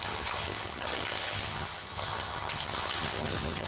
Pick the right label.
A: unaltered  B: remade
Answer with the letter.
B